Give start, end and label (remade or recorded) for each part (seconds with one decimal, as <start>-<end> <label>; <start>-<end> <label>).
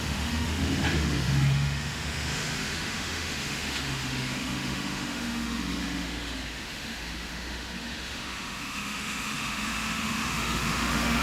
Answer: 0.0-11.2 remade